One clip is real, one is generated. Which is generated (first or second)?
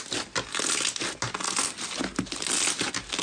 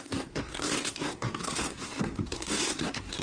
second